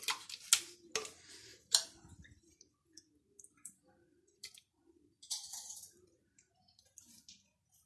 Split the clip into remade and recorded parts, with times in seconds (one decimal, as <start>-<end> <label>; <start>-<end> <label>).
0.0-1.5 recorded; 1.5-6.2 remade; 6.2-7.9 recorded